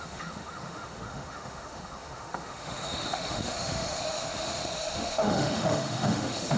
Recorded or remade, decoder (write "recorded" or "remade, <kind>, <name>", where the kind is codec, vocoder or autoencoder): remade, autoencoder, DAC-VAE